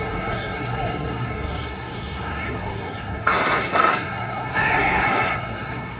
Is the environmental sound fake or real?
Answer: fake